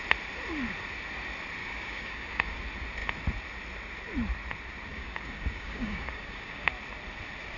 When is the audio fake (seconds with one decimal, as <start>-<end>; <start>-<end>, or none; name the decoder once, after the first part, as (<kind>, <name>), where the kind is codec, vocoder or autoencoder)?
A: 1.6-2.6 (codec, DAC); 4.9-6.7